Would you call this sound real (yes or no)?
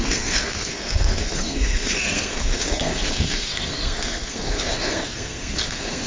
no